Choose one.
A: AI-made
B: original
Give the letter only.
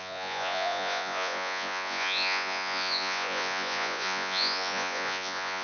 A